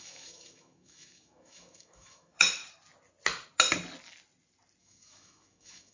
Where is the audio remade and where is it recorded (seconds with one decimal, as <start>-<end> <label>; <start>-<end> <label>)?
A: 0.0-2.6 remade; 2.6-4.8 recorded; 4.8-5.9 remade